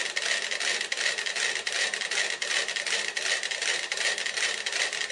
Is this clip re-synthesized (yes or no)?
no